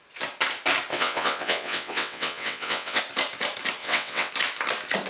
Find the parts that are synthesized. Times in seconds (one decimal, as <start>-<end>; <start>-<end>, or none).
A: 0.9-3.0; 3.8-4.3